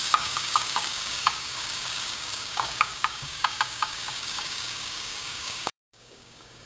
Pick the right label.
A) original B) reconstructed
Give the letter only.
B